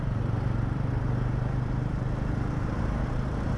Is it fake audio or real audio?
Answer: fake